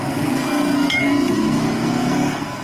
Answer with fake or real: fake